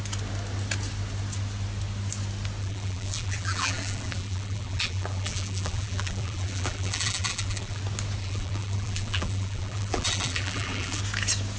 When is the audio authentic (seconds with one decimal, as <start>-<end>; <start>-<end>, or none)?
0.0-2.6; 7.8-8.2; 11.0-11.6